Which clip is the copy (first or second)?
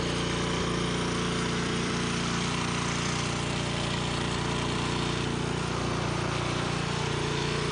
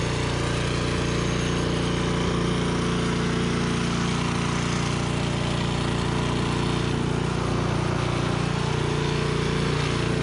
first